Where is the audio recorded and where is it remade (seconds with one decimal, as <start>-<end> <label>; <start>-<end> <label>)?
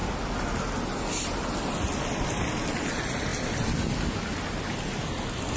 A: 0.0-4.3 recorded; 4.3-4.9 remade; 4.9-5.6 recorded